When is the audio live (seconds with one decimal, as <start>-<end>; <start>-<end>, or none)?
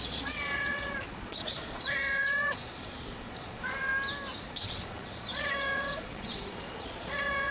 3.9-4.5